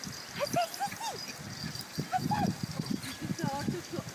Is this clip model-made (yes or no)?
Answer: no